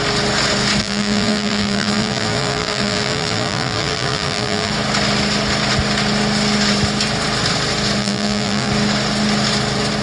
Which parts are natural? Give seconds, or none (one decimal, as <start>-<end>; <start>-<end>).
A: 0.0-0.8; 4.7-8.0; 8.7-10.0